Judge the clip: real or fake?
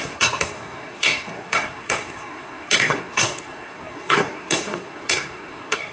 fake